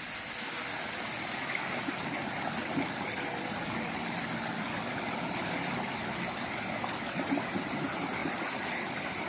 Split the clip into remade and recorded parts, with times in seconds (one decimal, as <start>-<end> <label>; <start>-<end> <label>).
0.0-9.3 recorded